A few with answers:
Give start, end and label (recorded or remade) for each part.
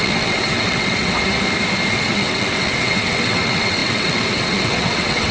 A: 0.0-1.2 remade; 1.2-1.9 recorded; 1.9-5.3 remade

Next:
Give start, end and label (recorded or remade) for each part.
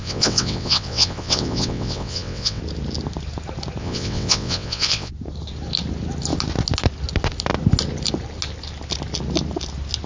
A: 0.0-2.6 remade; 2.6-3.8 recorded; 3.8-5.1 remade; 5.1-10.1 recorded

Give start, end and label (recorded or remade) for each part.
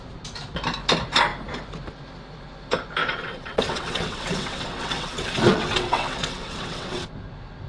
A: 0.0-3.0 recorded; 3.0-7.1 remade; 7.1-7.7 recorded